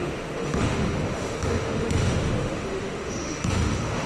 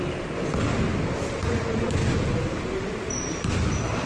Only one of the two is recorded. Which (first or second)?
second